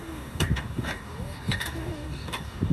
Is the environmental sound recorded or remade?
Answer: remade